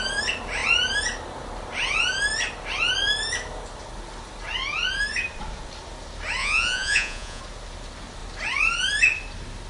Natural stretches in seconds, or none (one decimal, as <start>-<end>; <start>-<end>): 0.0-6.4; 7.4-9.7